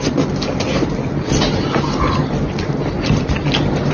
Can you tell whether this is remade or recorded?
recorded